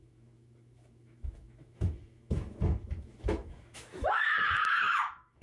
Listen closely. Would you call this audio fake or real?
fake